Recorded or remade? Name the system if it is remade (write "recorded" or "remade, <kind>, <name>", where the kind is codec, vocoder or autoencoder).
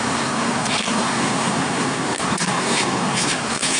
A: remade, codec, SNAC